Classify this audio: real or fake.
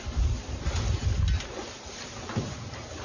real